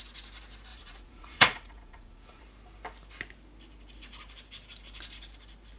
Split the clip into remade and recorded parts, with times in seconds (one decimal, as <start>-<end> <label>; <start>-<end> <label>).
0.0-0.7 recorded; 0.7-2.4 remade; 2.4-5.8 recorded